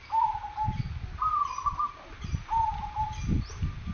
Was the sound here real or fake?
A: real